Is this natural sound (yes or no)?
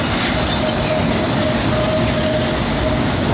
yes